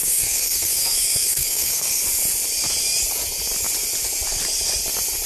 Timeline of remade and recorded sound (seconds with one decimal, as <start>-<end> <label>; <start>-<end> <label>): 0.0-2.0 remade; 2.0-5.3 recorded